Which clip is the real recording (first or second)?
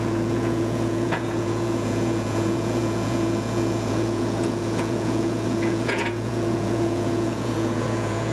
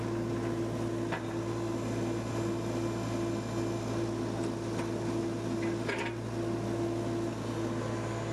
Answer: second